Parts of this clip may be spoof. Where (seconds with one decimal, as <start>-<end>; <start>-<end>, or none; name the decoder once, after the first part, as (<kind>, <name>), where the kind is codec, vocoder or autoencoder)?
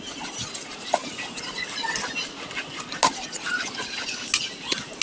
none